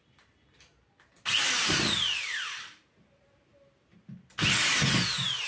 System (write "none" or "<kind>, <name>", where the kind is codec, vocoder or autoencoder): none